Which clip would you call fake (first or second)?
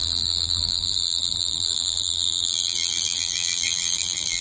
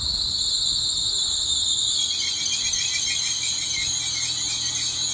first